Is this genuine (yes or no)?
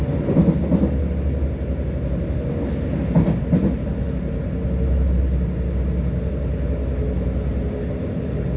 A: yes